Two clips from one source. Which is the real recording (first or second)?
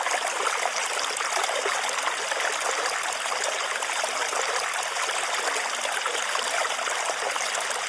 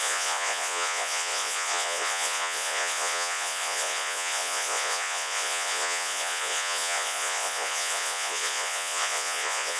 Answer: first